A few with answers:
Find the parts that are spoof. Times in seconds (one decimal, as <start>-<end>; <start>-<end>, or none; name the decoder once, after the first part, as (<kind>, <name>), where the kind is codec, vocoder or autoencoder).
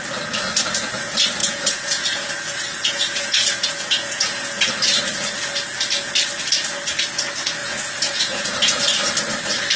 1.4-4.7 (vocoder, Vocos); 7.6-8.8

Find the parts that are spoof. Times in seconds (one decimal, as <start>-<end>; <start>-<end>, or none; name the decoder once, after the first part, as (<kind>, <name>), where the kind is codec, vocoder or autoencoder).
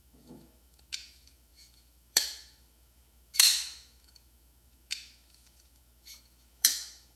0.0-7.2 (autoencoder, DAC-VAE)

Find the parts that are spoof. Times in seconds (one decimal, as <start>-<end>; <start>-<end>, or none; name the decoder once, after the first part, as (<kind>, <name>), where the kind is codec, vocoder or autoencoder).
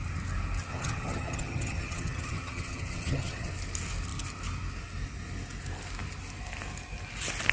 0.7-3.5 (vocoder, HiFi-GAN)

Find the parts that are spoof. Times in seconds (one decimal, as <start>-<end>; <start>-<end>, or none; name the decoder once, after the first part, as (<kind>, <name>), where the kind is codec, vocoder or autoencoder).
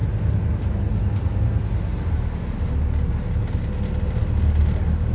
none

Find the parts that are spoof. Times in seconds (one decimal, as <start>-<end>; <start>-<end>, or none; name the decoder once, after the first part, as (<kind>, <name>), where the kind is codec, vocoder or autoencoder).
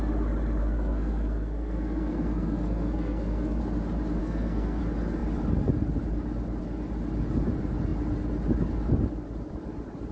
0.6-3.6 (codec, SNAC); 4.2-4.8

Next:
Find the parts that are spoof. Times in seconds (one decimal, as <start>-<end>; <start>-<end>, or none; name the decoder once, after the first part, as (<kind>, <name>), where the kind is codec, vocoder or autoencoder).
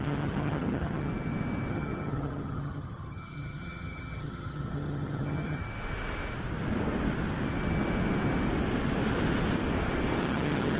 0.0-1.1 (vocoder, HiFi-GAN); 1.7-5.6; 10.2-10.8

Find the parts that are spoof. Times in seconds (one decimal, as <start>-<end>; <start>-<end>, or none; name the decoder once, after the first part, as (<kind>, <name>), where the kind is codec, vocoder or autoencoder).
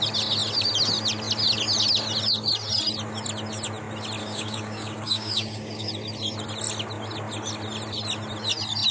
4.2-5.9 (codec, DAC)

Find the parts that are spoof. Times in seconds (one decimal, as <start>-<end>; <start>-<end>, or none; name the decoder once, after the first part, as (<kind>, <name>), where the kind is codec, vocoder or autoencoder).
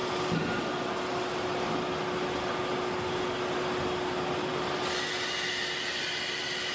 none